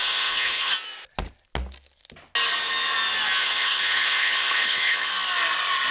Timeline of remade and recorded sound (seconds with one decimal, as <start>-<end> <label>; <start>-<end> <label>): 0.0-0.7 remade; 0.7-3.4 recorded; 3.4-5.1 remade; 5.1-5.9 recorded